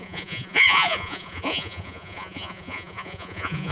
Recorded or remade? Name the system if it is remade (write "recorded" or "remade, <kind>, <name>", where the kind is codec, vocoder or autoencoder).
remade, vocoder, Vocos